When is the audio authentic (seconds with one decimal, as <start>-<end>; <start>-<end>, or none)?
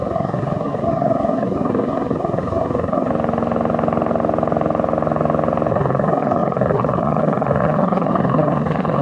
3.1-5.7